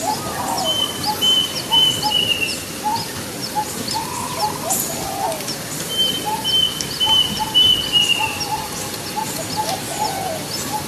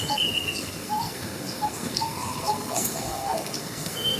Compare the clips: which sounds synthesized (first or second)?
second